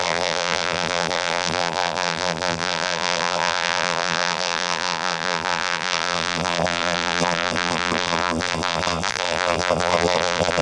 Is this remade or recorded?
remade